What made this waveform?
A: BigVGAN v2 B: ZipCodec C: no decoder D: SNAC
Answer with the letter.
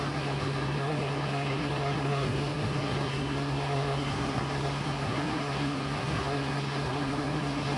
D